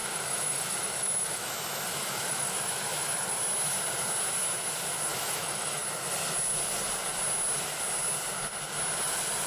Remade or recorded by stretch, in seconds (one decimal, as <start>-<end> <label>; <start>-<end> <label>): 0.0-3.3 remade; 3.3-5.1 recorded; 5.1-5.8 remade; 5.8-9.5 recorded